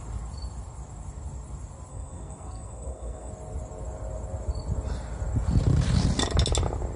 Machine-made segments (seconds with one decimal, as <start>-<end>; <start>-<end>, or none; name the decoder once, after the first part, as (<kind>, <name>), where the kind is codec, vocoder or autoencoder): 1.9-3.3 (codec, SNAC)